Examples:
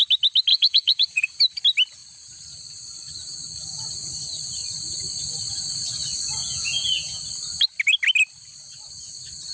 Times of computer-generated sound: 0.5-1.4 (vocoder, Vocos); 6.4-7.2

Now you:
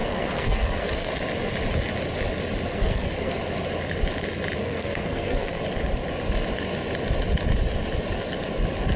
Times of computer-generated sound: 0.0-1.1 (codec, SNAC); 2.7-3.4; 4.6-5.6

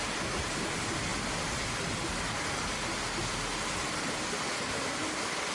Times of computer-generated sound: none

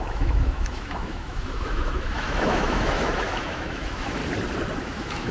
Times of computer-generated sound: 0.0-4.2 (autoencoder, DAC-VAE); 4.8-5.3